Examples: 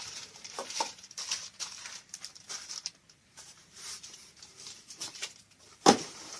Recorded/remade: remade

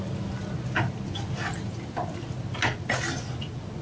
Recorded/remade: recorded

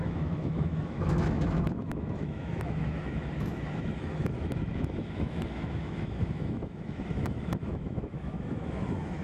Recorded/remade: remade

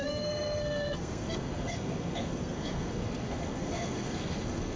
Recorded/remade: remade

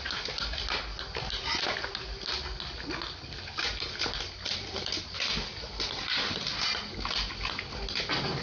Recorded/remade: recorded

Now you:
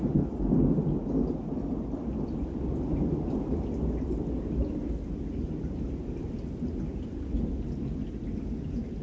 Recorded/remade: recorded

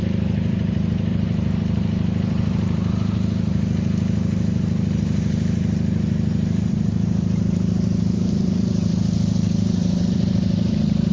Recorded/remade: remade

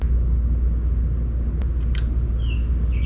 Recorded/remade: recorded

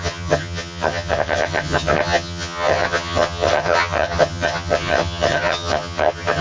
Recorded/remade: remade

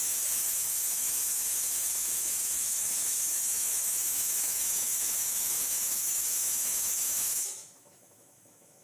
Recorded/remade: remade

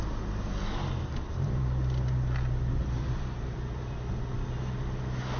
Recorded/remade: recorded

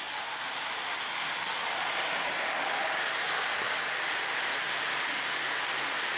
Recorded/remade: recorded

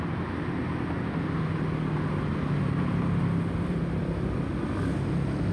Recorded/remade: recorded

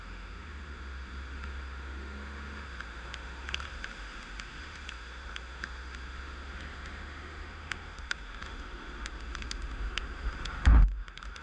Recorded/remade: remade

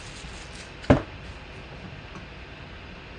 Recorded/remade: recorded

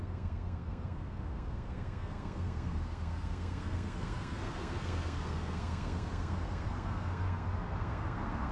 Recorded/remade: remade